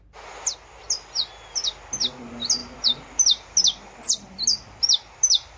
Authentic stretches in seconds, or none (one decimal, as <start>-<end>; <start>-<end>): 0.0-5.6